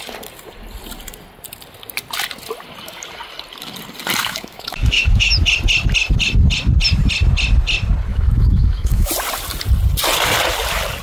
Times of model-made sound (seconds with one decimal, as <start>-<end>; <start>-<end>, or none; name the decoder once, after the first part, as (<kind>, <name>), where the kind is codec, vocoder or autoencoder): 4.2-5.4 (autoencoder, DAC-VAE); 8.1-9.1